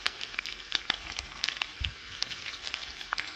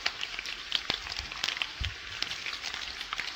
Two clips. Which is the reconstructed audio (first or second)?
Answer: first